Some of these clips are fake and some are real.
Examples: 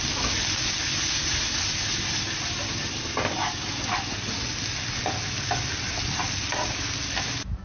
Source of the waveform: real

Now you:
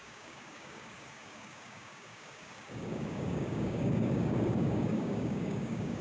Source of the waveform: fake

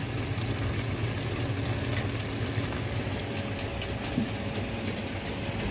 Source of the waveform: real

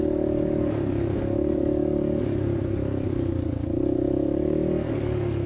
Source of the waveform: fake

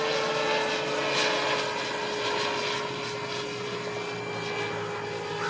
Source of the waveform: real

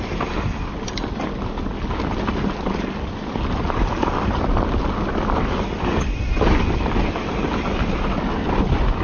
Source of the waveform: real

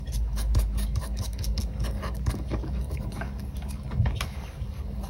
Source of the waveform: fake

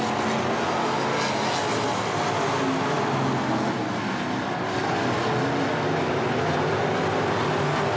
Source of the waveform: real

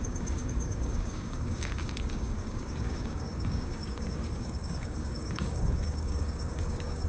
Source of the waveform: fake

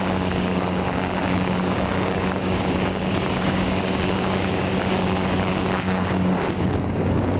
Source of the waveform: fake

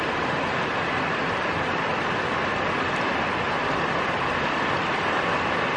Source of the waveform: real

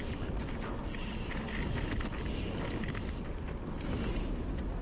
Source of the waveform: real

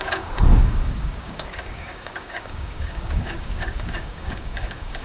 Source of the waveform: fake